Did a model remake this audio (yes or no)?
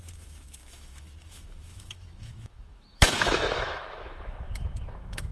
yes